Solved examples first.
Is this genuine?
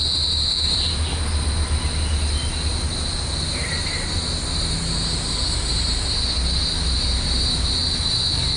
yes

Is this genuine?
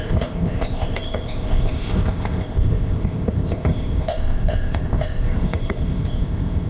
no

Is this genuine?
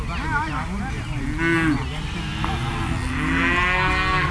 yes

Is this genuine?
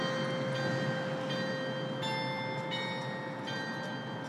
yes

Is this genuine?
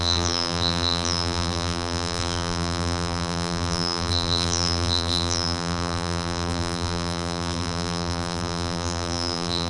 no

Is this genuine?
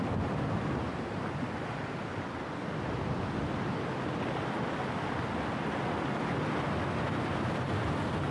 yes